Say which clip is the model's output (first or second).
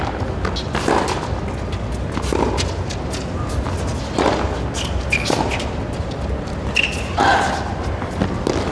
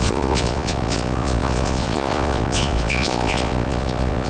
second